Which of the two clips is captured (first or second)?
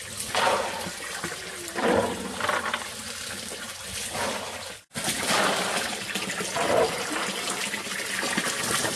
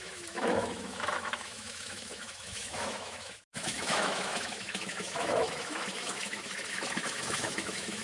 first